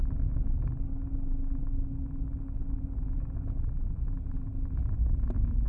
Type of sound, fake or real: real